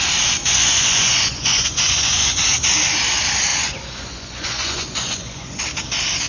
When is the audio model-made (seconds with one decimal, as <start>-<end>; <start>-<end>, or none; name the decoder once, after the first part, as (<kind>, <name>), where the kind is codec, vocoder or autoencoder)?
0.4-2.4 (vocoder, Vocos); 3.5-5.6